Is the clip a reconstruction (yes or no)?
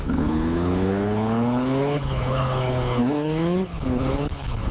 yes